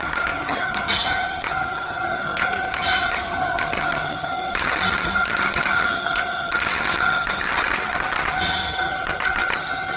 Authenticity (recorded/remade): remade